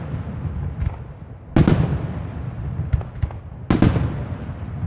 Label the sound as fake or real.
real